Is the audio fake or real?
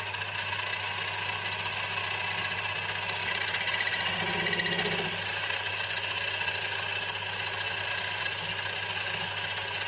real